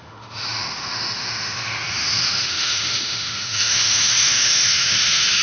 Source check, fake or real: fake